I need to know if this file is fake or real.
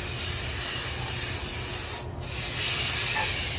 real